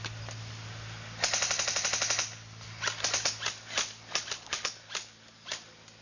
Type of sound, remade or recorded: recorded